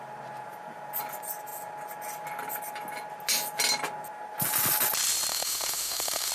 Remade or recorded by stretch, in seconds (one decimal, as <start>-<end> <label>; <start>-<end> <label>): 0.0-5.3 recorded; 5.3-6.3 remade